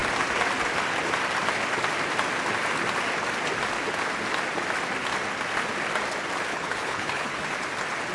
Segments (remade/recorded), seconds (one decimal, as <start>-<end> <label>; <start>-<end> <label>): 0.0-6.5 recorded; 6.5-7.4 remade; 7.4-8.1 recorded